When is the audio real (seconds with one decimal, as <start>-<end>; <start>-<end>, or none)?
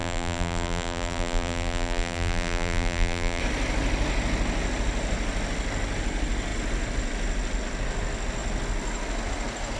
3.4-9.8